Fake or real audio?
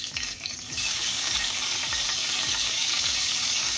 fake